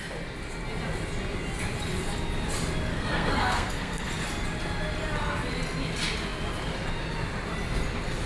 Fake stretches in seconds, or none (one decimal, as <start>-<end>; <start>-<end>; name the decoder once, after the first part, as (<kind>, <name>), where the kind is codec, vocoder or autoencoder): 2.9-4.1 (codec, SNAC)